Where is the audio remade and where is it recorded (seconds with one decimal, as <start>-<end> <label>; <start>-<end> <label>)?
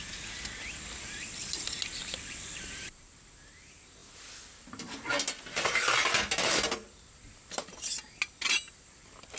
0.0-2.0 recorded; 2.0-2.6 remade; 2.6-9.4 recorded